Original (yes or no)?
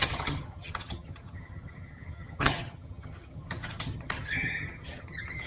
no